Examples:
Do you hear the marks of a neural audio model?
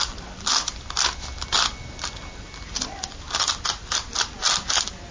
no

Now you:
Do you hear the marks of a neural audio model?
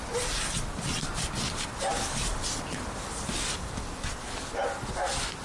no